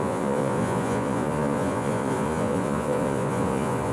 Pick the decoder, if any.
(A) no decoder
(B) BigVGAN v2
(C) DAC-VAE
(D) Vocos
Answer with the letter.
D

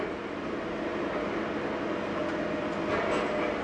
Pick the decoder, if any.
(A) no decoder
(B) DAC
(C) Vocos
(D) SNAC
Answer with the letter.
A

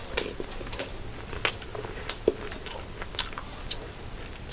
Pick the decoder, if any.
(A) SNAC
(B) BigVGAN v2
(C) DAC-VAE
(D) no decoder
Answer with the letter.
D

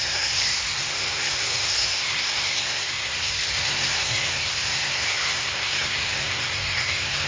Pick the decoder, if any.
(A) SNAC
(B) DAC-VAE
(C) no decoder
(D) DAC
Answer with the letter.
A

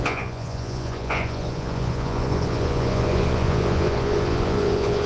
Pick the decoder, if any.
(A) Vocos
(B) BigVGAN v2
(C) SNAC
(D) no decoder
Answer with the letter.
A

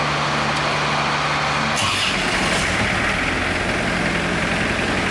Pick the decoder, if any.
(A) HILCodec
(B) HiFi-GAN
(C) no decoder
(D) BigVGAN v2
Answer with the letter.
C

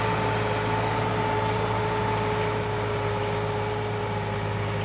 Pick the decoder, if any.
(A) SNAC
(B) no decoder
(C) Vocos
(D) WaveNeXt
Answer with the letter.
B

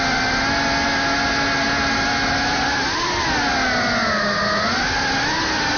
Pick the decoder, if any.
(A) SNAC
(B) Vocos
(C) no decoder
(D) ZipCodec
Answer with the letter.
C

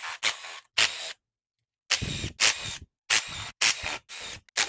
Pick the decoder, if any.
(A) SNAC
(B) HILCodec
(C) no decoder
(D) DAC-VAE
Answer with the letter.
C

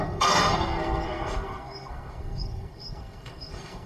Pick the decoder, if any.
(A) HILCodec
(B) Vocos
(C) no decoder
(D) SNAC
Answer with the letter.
D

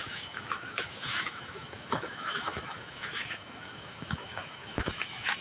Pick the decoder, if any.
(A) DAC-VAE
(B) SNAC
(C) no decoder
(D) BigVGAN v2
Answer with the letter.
A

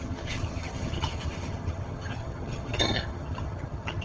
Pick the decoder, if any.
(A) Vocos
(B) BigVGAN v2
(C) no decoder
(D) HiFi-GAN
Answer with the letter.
D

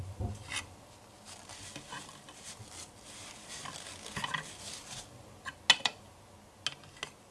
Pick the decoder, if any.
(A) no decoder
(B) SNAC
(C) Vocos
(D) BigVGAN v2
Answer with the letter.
A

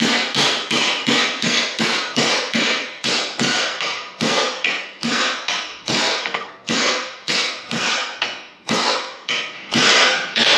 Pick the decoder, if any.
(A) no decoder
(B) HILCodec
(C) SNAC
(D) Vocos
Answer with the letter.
C